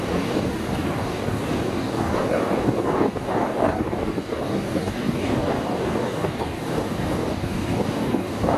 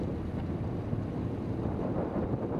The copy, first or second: first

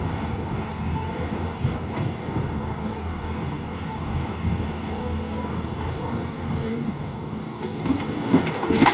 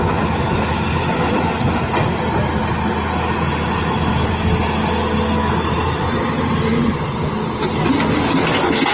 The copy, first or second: first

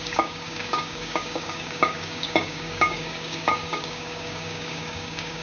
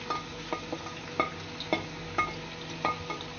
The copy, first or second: first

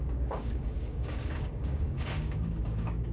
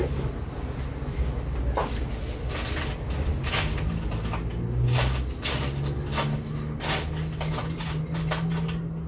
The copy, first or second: first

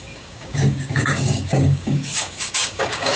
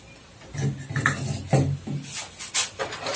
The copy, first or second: first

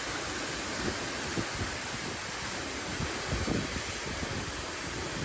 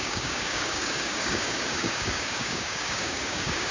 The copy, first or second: second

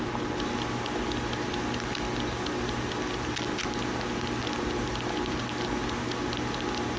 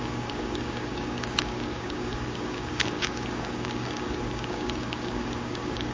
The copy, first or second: second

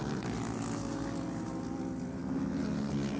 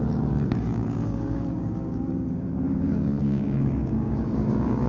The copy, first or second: second